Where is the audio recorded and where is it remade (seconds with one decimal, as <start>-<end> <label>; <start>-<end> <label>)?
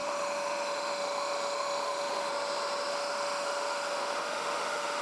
0.0-2.3 remade; 2.3-2.9 recorded; 2.9-5.0 remade